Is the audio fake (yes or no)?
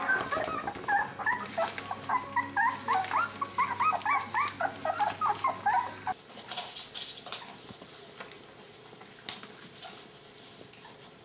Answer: no